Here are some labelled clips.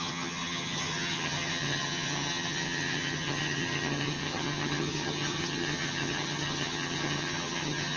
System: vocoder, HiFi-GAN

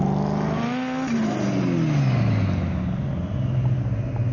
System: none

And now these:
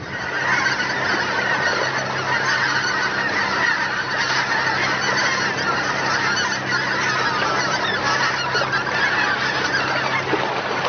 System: none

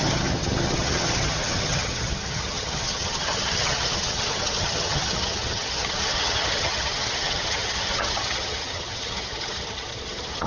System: vocoder, HiFi-GAN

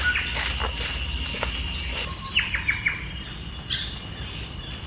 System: none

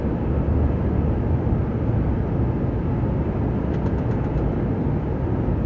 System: none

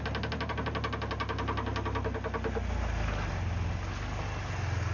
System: none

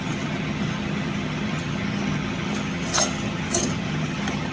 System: vocoder, HiFi-GAN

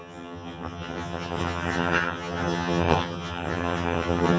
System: vocoder, HiFi-GAN